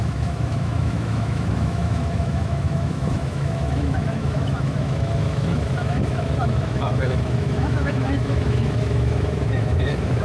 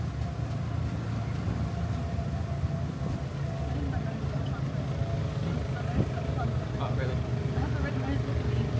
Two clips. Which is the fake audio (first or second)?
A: first